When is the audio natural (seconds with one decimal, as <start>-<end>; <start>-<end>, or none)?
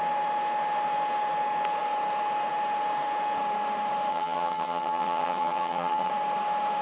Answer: 0.0-4.1; 6.1-6.8